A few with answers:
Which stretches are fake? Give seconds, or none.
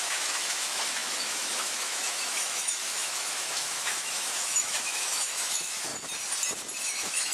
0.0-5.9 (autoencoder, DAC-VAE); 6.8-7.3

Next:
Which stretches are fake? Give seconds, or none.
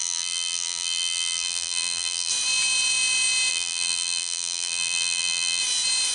0.0-2.3 (vocoder, BigVGAN v2); 3.5-5.6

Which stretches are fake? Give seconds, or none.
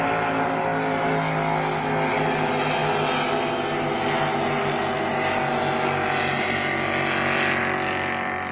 none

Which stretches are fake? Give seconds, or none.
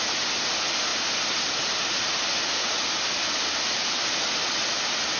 none